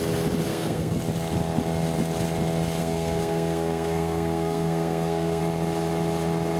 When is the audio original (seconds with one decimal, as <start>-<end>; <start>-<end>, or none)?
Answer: 0.0-0.5; 1.0-2.8; 5.4-6.6